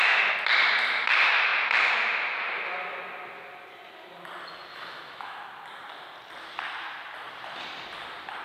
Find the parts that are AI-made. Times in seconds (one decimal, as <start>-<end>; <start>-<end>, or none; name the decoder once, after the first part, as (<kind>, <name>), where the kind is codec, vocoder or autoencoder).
4.7-5.4 (autoencoder, DAC-VAE)